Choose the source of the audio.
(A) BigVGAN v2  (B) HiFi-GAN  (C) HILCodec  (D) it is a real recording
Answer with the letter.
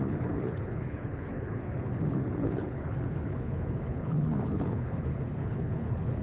C